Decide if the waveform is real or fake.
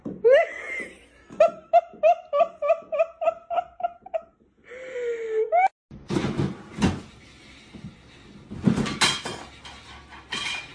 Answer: real